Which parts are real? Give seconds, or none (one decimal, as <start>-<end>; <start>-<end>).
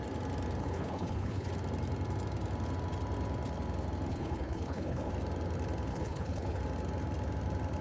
0.0-0.6; 1.5-4.1; 5.1-5.9; 6.6-7.8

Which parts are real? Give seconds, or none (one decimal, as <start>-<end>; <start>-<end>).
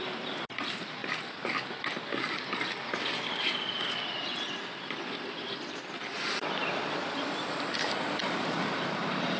1.0-2.5; 3.5-8.2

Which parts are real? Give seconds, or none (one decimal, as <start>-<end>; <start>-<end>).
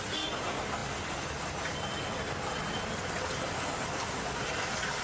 0.0-5.0